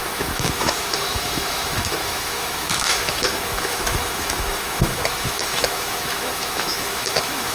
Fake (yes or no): yes